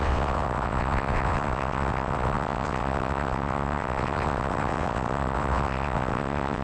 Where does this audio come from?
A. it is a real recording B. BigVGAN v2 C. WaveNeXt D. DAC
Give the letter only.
C